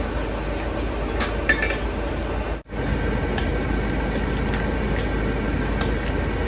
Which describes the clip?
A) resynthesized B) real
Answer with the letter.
B